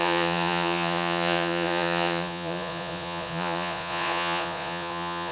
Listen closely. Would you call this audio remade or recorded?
remade